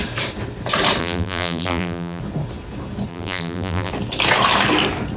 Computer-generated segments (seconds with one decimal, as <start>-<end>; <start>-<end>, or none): 1.0-2.2; 3.1-3.9